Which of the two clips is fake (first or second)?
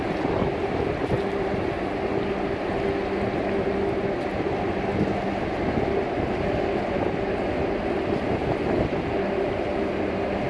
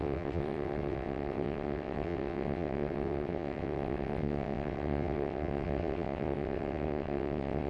second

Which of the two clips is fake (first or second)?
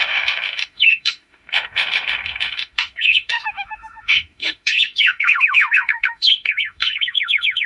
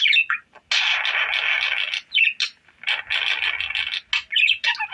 first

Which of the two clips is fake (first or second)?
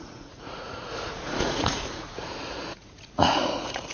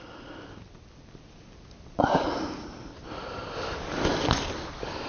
first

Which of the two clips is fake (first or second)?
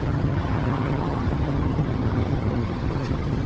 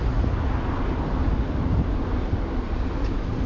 first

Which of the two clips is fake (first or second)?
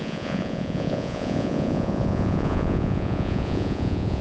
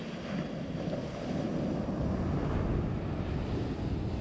first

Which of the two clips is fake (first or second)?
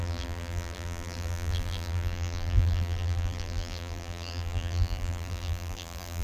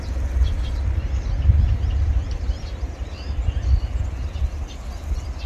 first